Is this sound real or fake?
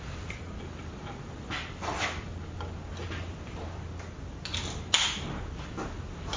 real